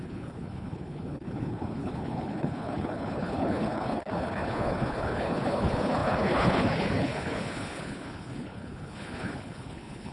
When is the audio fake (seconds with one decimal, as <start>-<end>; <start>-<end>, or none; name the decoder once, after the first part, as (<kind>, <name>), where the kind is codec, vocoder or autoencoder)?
0.0-10.1 (codec, HILCodec)